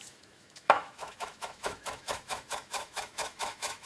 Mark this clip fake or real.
fake